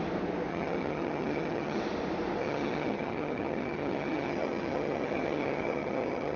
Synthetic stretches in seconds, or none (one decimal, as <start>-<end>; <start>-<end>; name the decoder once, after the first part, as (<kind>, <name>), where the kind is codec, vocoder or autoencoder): 0.5-1.8 (vocoder, HiFi-GAN); 2.4-6.4